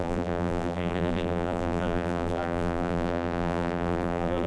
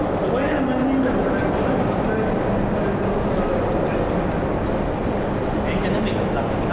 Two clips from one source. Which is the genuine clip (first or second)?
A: second